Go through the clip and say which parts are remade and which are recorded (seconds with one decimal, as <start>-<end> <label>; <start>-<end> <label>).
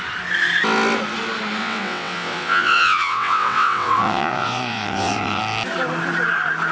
0.0-1.6 recorded; 1.6-5.4 remade; 5.4-6.7 recorded